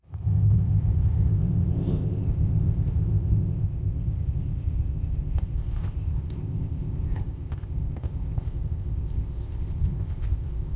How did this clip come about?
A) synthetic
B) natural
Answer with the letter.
A